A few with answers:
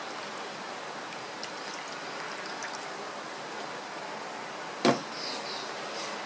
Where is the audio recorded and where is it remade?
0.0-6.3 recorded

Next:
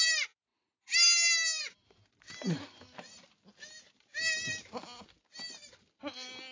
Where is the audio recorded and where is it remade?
0.0-6.5 recorded